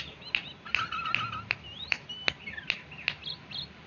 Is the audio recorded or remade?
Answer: recorded